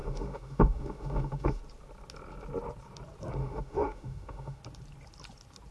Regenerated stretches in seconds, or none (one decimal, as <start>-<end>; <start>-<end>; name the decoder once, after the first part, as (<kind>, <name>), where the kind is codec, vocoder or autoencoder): 0.0-1.6 (autoencoder, DAC-VAE); 3.4-4.6